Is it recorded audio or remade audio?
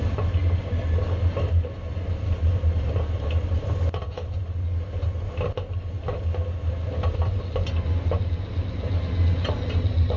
recorded